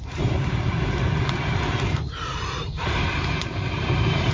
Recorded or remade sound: remade